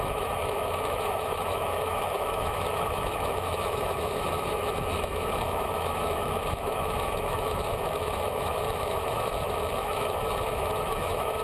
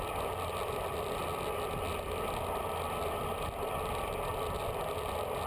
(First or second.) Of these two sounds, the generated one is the first